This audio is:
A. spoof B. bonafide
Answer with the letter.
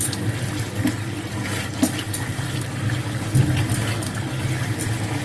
B